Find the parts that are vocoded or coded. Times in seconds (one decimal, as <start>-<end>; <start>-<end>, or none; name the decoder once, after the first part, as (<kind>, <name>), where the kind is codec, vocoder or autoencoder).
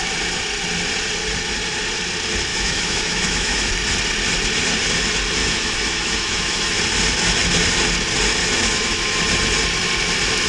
2.5-3.7 (autoencoder, DAC-VAE); 5.4-6.8; 8.4-9.2